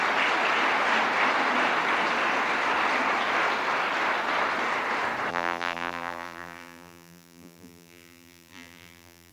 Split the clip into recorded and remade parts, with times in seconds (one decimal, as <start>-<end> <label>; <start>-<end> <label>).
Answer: 0.0-5.3 recorded; 5.3-9.3 remade